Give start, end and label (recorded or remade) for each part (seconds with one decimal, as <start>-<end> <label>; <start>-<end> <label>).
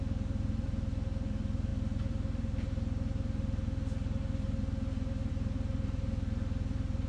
0.0-7.1 recorded